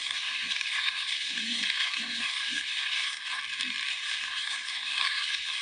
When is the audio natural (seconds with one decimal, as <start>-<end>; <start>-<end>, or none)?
3.4-3.9